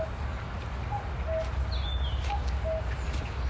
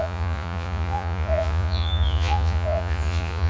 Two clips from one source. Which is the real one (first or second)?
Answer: first